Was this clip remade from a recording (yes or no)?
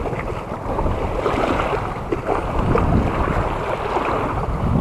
no